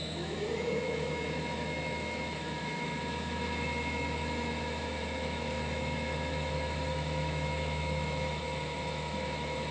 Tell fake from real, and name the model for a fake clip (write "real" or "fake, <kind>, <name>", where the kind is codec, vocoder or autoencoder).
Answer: fake, autoencoder, DAC-VAE